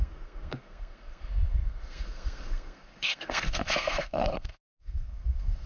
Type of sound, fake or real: fake